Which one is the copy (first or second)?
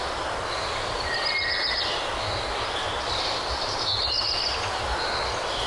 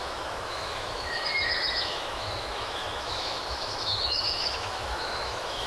second